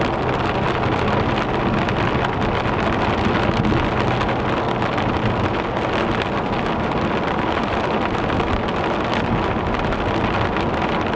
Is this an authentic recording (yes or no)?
yes